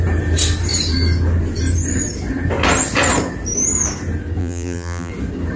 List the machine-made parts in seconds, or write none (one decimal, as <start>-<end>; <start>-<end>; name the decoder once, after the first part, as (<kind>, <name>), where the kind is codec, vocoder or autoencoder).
4.4-5.1 (vocoder, BigVGAN v2)